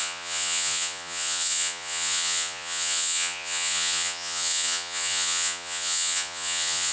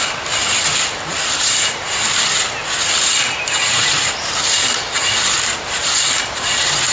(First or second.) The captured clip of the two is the second